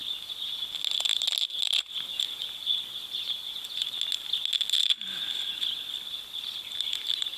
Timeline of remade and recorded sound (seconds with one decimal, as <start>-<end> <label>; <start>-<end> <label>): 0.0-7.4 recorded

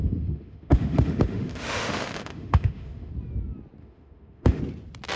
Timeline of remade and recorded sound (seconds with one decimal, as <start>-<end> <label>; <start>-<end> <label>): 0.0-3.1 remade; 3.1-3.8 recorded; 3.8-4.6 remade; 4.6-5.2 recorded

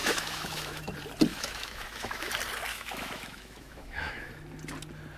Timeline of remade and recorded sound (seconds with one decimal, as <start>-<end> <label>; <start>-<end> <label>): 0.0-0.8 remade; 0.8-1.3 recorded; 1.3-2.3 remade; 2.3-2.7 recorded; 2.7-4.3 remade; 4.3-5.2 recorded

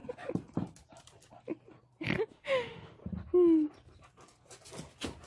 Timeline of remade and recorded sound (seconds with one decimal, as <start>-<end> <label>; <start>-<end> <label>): 0.0-2.3 recorded; 2.3-3.0 remade; 3.0-5.3 recorded

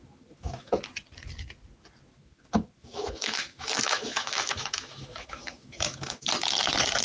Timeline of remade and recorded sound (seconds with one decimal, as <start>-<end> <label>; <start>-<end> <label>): 0.0-0.8 remade; 0.8-2.1 recorded; 2.1-6.3 remade; 6.3-7.0 recorded